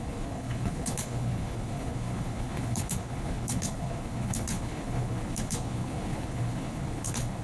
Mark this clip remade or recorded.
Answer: remade